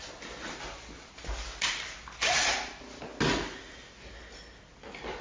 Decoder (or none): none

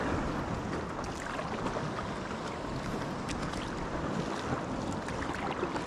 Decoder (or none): none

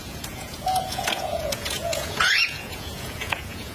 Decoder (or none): vocoder, Vocos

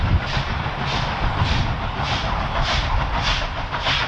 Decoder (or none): none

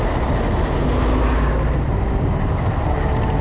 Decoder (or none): none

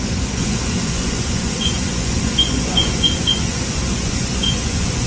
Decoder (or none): vocoder, Vocos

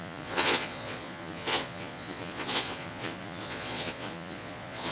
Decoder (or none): vocoder, Vocos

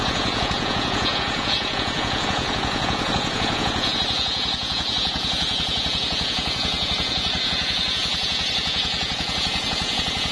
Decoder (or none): vocoder, Vocos